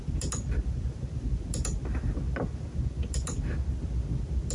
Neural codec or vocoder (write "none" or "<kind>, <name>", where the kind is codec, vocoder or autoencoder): none